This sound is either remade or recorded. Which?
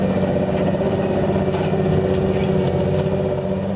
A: recorded